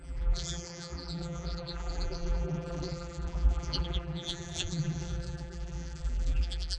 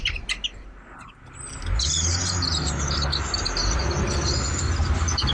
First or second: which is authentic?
second